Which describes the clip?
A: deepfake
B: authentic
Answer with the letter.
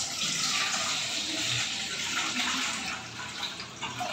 B